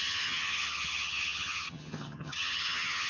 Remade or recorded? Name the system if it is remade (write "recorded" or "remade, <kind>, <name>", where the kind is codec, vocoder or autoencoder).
remade, vocoder, HiFi-GAN